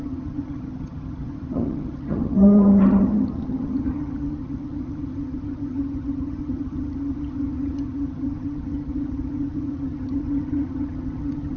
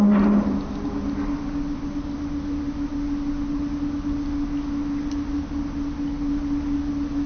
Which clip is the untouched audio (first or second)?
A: second